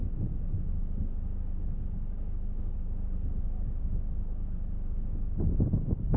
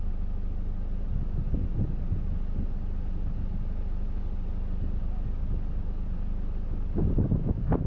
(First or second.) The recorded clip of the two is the second